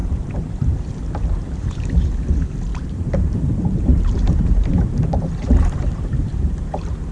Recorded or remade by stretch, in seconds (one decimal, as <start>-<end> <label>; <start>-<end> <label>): 0.0-0.9 remade; 0.9-2.7 recorded; 2.7-7.1 remade